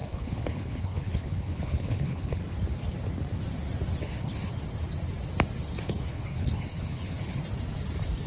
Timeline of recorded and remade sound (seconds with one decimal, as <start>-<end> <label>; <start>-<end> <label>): 0.0-2.4 remade; 2.4-4.0 recorded; 4.0-4.5 remade; 4.5-5.8 recorded; 5.8-7.4 remade; 7.4-8.3 recorded